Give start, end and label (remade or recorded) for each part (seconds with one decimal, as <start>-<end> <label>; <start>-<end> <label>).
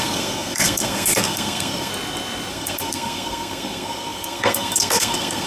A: 0.0-1.9 remade; 1.9-2.5 recorded; 2.5-5.5 remade